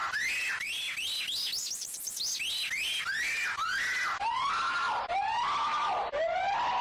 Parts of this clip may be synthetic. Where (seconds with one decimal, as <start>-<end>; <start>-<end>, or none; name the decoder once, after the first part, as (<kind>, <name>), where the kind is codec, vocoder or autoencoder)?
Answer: none